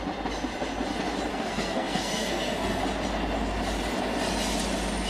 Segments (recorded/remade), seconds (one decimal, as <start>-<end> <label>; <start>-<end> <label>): 0.0-1.3 recorded; 1.3-2.8 remade; 2.8-5.1 recorded

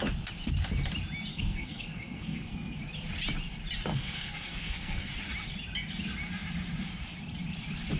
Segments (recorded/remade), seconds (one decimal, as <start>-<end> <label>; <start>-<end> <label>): 0.0-1.3 recorded; 1.3-2.8 remade; 2.8-3.9 recorded; 3.9-5.1 remade; 5.1-8.0 recorded

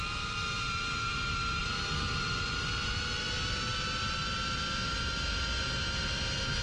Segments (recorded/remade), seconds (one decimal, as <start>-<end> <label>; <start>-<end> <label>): 0.0-6.6 recorded

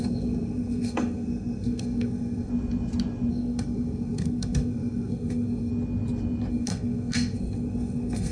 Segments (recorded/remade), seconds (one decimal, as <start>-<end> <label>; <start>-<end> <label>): 0.0-2.5 remade; 2.5-3.3 recorded; 3.3-5.7 remade; 5.7-6.5 recorded; 6.5-8.3 remade

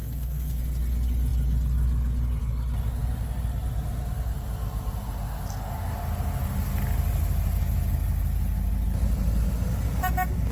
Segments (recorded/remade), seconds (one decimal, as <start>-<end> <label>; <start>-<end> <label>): 0.0-0.6 remade; 0.6-10.5 recorded

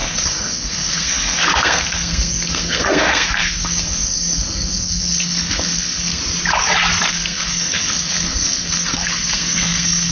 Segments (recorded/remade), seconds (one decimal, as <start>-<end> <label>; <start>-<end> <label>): 0.0-6.2 remade; 6.2-7.1 recorded; 7.1-10.1 remade